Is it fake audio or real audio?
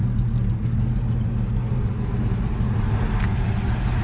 real